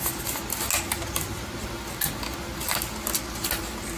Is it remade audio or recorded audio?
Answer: recorded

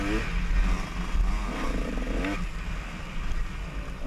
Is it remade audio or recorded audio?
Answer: recorded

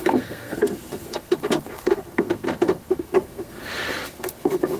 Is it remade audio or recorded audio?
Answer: remade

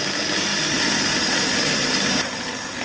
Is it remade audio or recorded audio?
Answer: recorded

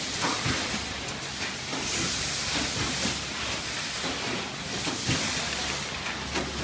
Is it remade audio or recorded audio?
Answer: recorded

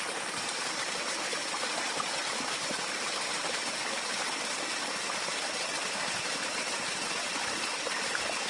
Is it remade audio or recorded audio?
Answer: recorded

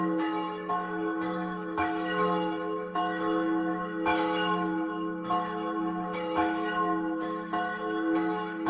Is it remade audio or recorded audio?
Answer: remade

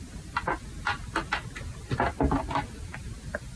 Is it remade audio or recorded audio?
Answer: recorded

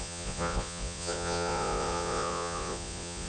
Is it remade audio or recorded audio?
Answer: remade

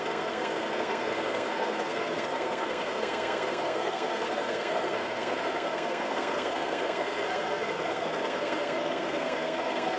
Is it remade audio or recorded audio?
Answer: remade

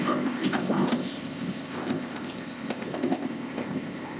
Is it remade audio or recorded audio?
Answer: remade